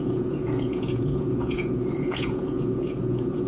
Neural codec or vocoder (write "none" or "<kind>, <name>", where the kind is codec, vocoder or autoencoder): vocoder, Vocos